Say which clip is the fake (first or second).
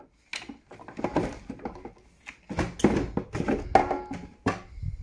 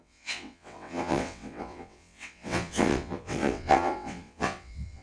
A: second